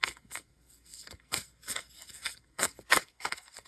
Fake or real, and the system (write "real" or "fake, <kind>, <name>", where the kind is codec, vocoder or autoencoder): fake, codec, SNAC